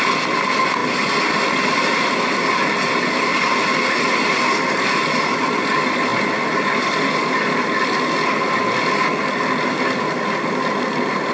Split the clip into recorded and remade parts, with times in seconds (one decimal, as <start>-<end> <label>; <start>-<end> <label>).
0.0-11.3 recorded